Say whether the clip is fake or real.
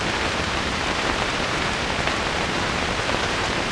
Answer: fake